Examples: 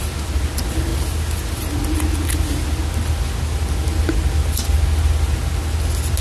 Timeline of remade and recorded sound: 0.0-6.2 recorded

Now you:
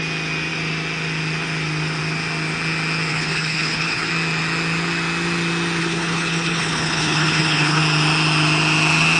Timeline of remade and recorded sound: 0.0-3.1 recorded; 3.1-4.1 remade; 4.1-5.8 recorded; 5.8-7.8 remade; 7.8-9.2 recorded

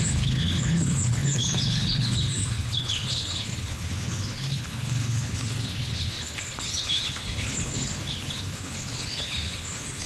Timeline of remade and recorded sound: 0.0-10.1 remade

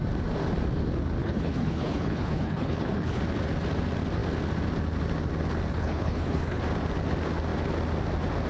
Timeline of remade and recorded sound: 0.0-1.2 recorded; 1.2-3.2 remade; 3.2-5.7 recorded; 5.7-6.6 remade; 6.6-8.5 recorded